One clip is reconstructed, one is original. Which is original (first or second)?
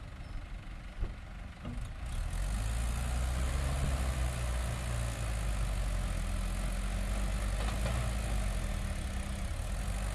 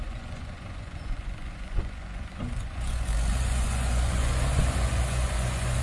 first